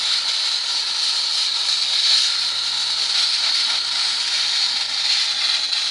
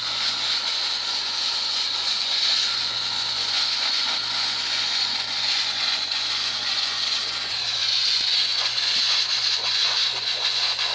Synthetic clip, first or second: second